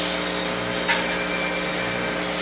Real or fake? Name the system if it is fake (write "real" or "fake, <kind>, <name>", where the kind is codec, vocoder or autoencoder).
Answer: real